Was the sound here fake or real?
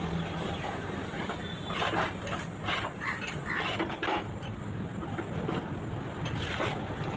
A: real